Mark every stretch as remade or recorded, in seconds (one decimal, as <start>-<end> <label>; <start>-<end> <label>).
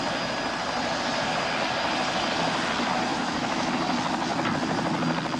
0.0-3.1 recorded; 3.1-3.7 remade; 3.7-5.4 recorded